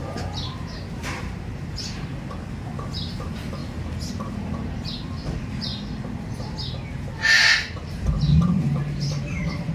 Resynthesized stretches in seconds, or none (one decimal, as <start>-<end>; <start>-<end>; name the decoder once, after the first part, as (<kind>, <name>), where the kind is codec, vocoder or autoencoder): 0.0-2.1 (vocoder, BigVGAN v2); 3.1-3.6; 4.1-5.7; 7.9-9.7